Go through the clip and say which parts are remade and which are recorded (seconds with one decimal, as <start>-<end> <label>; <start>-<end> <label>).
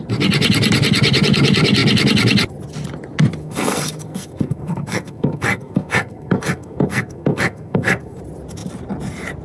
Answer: 0.0-3.4 recorded; 3.4-8.2 remade; 8.2-9.4 recorded